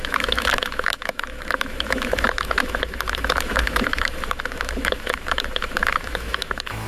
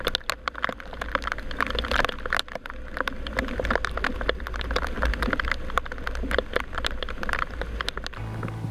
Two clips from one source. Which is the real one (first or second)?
second